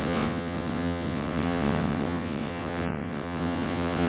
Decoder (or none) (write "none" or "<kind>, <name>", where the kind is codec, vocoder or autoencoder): vocoder, WaveNeXt